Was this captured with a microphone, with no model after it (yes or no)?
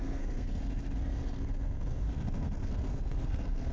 no